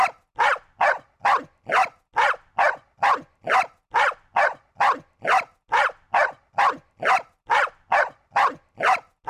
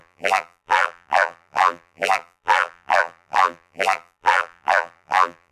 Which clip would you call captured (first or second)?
first